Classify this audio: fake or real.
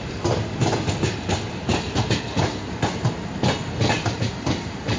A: real